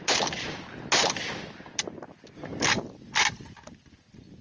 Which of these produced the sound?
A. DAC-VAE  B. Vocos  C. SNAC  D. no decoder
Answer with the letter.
D